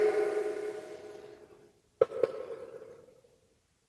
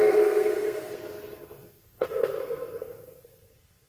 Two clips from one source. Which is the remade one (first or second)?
second